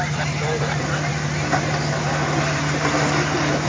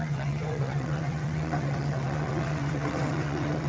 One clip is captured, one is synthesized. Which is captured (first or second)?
first